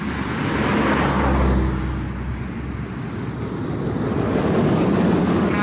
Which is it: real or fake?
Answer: real